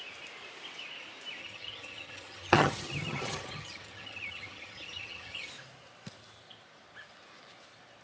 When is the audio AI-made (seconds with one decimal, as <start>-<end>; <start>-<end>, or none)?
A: 1.4-5.5